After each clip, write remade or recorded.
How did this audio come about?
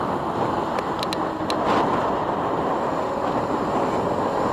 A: recorded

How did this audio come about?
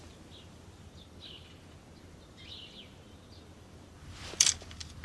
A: remade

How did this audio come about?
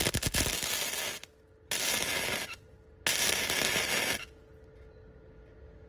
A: recorded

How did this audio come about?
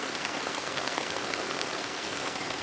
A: remade